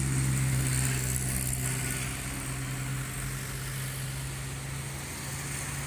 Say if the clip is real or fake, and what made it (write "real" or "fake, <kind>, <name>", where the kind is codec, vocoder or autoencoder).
real